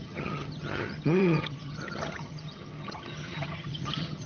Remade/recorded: remade